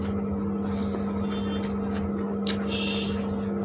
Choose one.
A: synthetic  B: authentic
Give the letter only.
B